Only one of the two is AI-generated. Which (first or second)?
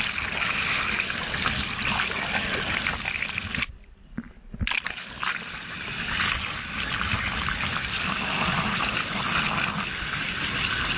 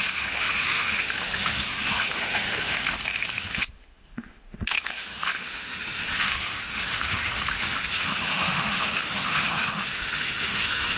second